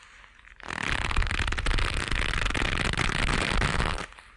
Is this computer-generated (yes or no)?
no